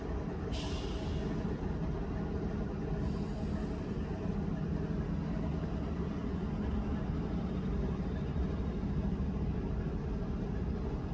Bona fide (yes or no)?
yes